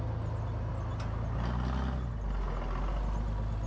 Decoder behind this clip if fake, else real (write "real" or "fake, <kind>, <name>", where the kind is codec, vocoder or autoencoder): real